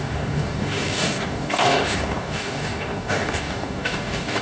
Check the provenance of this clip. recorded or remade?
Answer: remade